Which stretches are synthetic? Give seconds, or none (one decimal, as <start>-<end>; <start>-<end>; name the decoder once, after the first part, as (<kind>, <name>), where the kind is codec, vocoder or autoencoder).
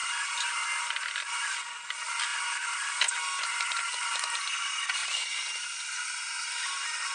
none